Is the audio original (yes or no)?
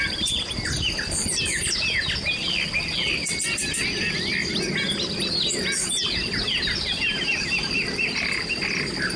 yes